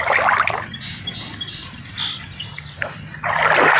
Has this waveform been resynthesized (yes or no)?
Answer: no